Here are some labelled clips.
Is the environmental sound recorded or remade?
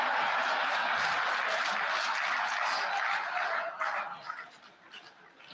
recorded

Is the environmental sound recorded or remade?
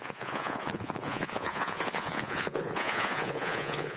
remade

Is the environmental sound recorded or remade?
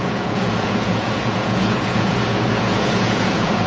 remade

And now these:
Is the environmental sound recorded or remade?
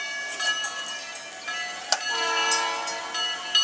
recorded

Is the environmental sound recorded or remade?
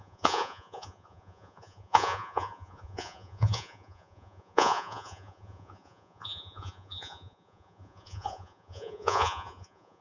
remade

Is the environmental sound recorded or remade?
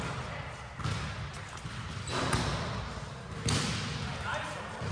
recorded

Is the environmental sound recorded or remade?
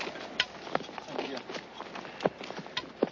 recorded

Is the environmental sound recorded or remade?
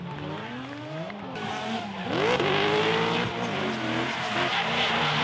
recorded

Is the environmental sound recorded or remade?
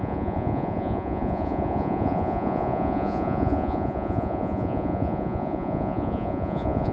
remade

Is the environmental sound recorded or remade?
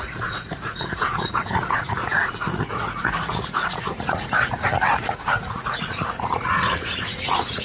remade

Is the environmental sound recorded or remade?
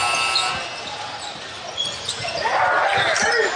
recorded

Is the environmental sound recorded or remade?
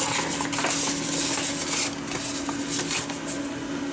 recorded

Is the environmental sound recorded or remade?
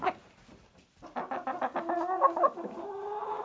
recorded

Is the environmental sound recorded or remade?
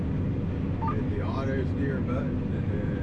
recorded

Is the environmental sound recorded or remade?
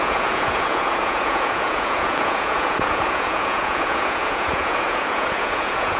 remade